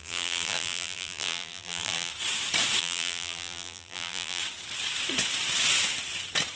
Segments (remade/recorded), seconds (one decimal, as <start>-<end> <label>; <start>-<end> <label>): 0.0-2.1 remade; 2.1-2.8 recorded; 2.8-4.4 remade; 4.4-6.6 recorded